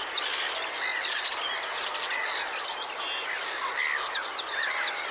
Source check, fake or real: real